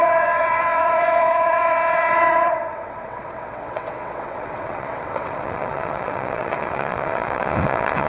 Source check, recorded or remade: remade